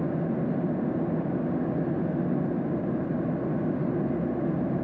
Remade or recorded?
recorded